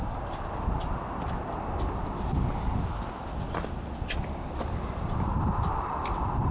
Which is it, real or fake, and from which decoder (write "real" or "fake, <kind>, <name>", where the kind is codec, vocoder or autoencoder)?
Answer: real